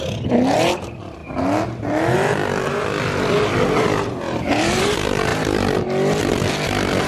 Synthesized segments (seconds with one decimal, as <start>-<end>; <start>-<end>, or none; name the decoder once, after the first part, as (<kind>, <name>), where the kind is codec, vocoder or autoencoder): 0.0-1.2 (vocoder, BigVGAN v2); 4.5-7.1